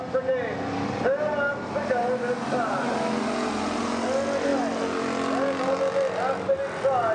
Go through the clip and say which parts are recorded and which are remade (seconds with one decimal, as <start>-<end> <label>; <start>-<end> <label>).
0.0-7.1 recorded